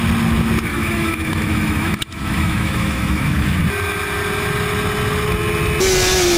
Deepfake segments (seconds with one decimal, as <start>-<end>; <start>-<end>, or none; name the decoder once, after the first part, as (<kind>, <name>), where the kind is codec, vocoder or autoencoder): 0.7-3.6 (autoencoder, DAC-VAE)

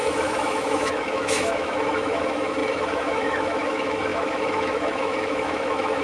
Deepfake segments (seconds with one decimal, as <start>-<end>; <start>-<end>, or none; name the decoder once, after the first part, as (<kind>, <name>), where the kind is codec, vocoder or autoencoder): 0.0-6.0 (autoencoder, DAC-VAE)

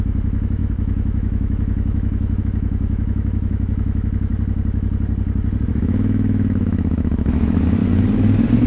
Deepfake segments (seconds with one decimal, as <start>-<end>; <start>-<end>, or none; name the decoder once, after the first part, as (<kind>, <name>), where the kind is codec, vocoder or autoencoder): 0.0-4.3 (autoencoder, DAC-VAE); 5.7-7.8